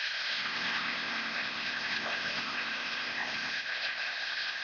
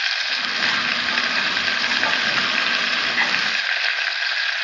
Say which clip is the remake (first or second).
first